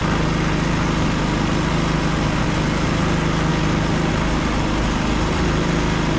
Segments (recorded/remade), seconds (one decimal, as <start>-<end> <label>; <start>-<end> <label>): 0.0-6.2 recorded